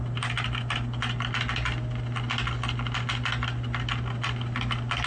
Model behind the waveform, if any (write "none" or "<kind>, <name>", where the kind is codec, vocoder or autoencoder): none